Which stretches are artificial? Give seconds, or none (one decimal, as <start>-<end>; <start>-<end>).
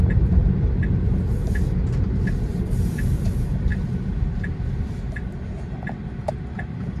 0.0-0.4; 2.6-7.0